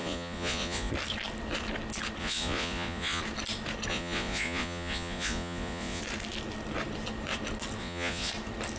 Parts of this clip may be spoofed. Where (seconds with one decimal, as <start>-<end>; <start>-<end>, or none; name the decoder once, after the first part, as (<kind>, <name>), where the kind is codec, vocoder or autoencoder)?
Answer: 0.0-0.9 (vocoder, Vocos); 2.2-3.2; 3.9-6.0; 7.8-8.3